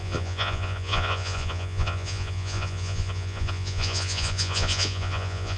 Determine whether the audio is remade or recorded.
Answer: remade